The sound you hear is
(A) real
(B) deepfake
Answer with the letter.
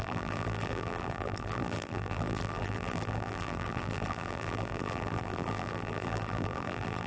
B